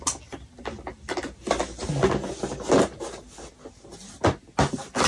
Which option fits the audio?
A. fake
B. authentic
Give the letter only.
B